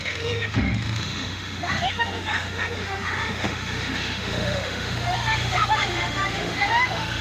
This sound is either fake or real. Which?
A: fake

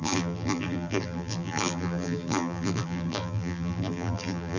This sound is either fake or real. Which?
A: fake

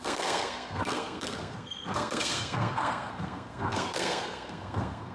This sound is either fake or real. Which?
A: fake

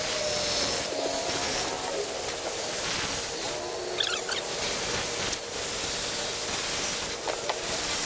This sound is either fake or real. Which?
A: real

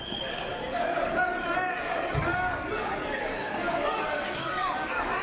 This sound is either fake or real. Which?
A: fake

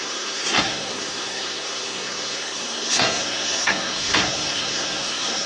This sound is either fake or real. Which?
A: fake